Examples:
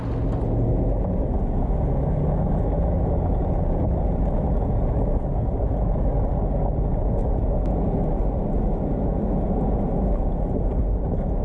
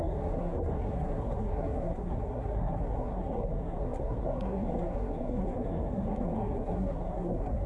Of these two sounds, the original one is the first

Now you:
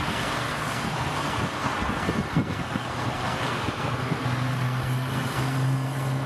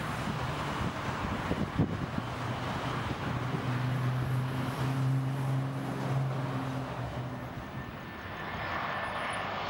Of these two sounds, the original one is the second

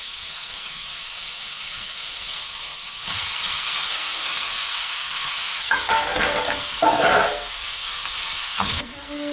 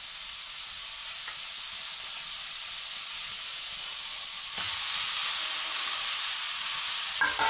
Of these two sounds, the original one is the second